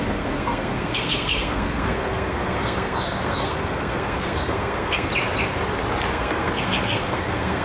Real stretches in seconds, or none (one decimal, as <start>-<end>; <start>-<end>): 5.1-6.1